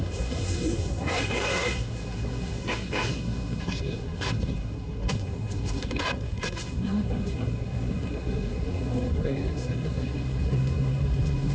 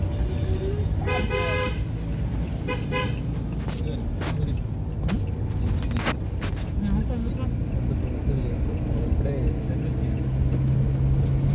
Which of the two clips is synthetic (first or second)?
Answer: first